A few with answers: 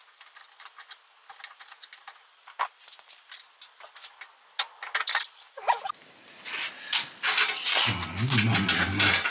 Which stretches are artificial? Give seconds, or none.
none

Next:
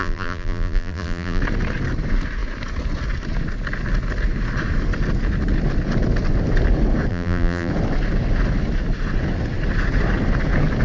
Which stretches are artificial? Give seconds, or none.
0.0-1.4 (vocoder, BigVGAN v2); 7.1-7.7

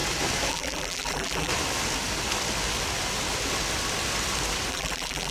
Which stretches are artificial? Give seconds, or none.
0.5-1.5 (vocoder, BigVGAN v2); 4.7-5.3